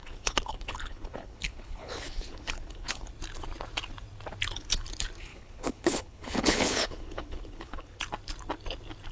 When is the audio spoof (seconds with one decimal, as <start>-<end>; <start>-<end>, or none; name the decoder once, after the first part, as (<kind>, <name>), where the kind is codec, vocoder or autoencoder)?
0.0-3.1 (codec, HILCodec); 5.3-8.0